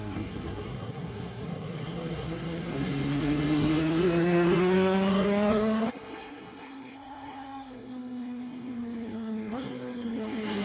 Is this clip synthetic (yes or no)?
yes